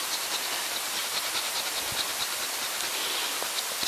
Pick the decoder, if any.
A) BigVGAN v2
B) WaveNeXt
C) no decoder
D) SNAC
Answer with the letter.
C